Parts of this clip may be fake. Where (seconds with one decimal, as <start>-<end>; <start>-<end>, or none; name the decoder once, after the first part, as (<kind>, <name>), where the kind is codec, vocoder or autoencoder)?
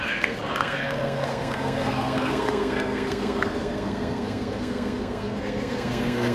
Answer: 0.0-6.3 (codec, SNAC)